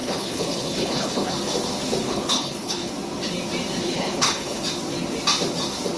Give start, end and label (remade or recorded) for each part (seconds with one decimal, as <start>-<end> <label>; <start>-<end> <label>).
0.0-1.3 remade; 1.3-2.0 recorded; 2.0-2.9 remade; 2.9-3.8 recorded; 3.8-4.6 remade; 4.6-6.0 recorded